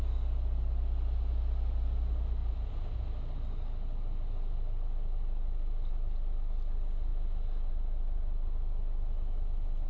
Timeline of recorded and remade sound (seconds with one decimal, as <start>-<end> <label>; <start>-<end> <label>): 0.0-9.9 recorded